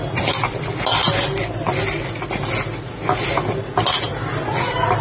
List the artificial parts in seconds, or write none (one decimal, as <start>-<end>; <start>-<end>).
none